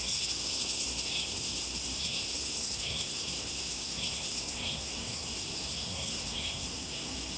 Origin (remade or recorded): remade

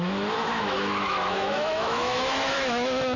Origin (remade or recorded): remade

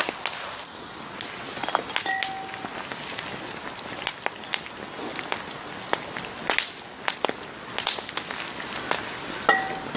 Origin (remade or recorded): recorded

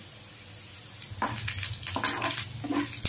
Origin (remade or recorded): recorded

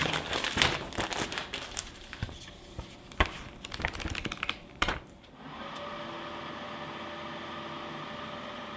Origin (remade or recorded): recorded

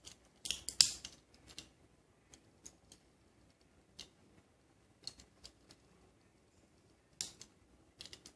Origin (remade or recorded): recorded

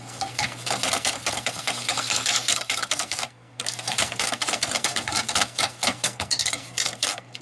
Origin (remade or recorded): remade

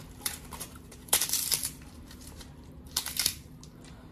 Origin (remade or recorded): remade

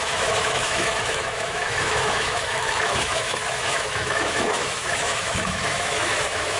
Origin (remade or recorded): remade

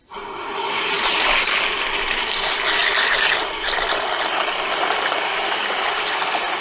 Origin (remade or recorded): recorded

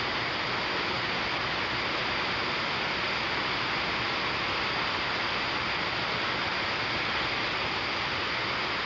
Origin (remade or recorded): recorded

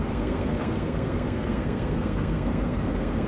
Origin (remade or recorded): remade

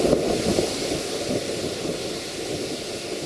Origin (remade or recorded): recorded